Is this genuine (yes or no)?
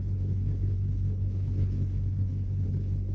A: no